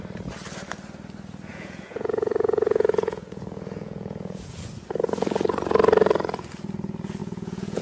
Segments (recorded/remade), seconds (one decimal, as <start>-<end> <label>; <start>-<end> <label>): 0.0-1.5 recorded; 1.5-4.5 remade; 4.5-7.2 recorded; 7.2-7.8 remade